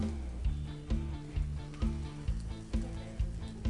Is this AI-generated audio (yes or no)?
no